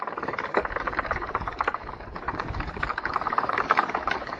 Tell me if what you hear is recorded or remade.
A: remade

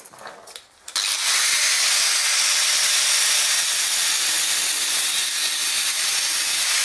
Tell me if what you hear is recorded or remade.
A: recorded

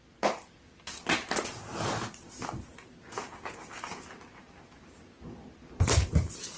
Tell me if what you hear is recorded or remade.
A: recorded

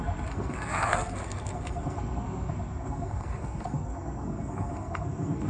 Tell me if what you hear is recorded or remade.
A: remade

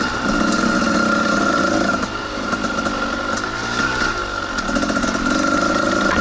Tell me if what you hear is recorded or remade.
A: recorded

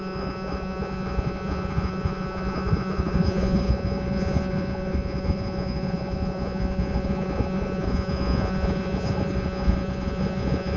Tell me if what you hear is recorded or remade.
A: remade